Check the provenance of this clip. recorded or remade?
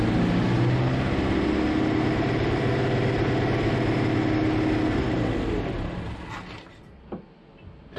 recorded